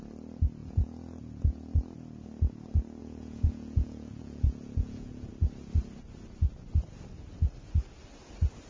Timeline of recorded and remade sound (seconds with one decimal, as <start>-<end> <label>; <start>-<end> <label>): 0.0-0.6 recorded; 0.6-1.7 remade; 1.7-3.0 recorded; 3.0-5.3 remade; 5.3-8.7 recorded